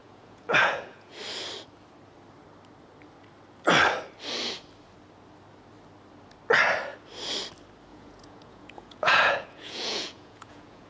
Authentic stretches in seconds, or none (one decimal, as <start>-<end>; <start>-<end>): 1.2-7.9